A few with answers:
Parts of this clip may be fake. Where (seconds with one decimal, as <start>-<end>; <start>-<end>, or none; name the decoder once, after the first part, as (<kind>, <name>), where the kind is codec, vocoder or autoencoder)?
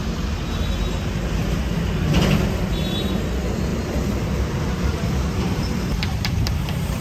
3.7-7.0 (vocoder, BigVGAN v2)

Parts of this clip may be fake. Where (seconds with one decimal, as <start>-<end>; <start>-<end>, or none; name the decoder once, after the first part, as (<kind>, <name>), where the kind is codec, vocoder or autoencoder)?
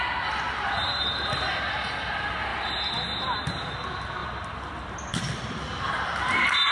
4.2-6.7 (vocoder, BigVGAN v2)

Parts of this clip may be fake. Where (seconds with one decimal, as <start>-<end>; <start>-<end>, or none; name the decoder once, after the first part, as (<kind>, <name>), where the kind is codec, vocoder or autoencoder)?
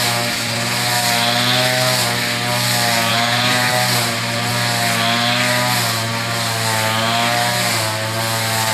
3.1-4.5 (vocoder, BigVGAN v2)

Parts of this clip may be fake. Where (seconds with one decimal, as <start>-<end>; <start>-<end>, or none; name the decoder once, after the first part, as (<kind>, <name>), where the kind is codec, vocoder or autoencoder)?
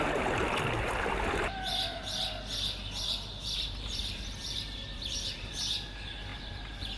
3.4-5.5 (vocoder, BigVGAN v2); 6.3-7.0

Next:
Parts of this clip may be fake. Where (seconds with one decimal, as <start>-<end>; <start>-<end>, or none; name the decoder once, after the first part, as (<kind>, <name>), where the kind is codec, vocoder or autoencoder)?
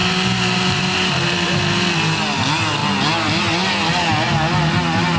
0.0-1.6 (vocoder, BigVGAN v2)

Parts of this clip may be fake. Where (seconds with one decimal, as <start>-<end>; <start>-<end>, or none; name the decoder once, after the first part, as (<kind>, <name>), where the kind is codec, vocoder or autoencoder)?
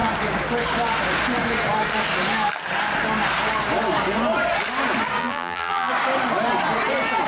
5.2-5.9 (vocoder, BigVGAN v2)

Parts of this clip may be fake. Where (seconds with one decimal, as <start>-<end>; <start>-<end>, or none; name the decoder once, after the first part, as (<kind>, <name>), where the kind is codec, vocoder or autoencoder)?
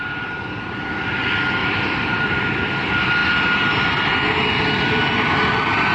1.6-2.7 (vocoder, BigVGAN v2)